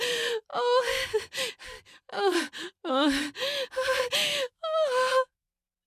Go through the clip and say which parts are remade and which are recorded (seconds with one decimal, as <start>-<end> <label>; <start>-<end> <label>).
0.0-4.2 recorded; 4.2-5.5 remade; 5.5-5.9 recorded